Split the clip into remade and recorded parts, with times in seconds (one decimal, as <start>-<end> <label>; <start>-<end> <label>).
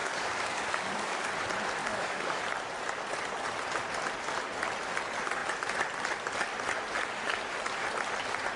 0.0-1.3 remade; 1.3-1.8 recorded; 1.8-2.4 remade; 2.4-8.6 recorded